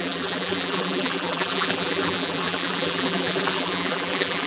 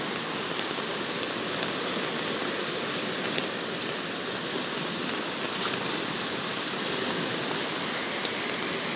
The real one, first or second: second